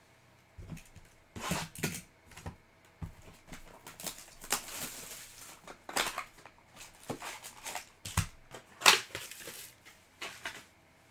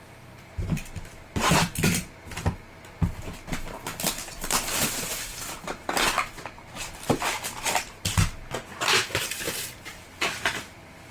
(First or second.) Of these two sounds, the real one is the first